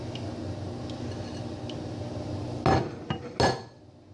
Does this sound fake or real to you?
real